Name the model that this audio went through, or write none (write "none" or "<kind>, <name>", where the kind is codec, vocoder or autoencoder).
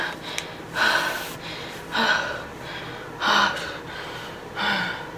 none